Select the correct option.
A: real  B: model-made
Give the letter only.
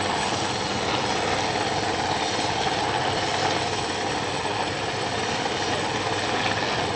A